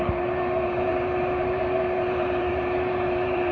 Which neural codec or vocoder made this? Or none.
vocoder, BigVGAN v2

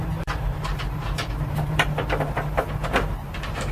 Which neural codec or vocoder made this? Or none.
vocoder, BigVGAN v2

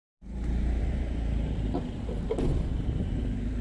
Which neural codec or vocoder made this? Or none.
vocoder, BigVGAN v2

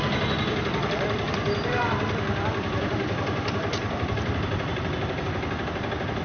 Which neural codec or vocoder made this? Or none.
vocoder, BigVGAN v2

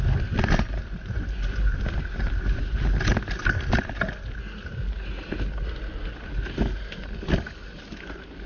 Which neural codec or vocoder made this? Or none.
none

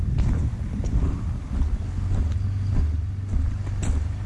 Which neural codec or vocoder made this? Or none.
none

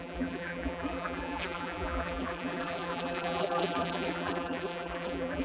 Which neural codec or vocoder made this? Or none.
vocoder, BigVGAN v2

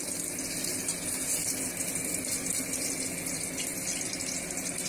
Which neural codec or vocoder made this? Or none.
none